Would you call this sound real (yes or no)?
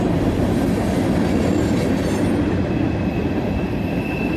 yes